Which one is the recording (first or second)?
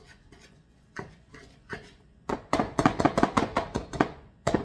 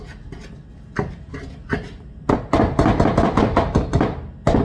second